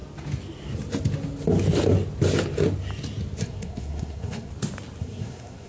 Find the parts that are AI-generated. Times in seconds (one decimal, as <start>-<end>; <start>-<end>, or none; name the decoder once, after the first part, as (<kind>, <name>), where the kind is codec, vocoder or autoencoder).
3.4-4.5 (codec, SNAC); 5.0-5.7